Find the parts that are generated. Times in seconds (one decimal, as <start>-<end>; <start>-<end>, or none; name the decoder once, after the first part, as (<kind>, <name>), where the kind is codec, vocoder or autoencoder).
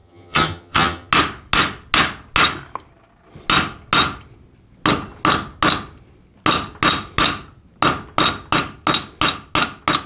0.0-1.1 (vocoder, HiFi-GAN)